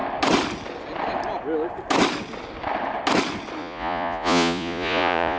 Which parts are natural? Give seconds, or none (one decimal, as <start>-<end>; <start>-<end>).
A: 0.0-3.6